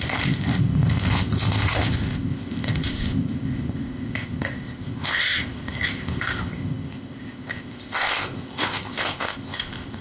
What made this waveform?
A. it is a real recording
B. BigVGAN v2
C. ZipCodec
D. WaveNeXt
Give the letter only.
C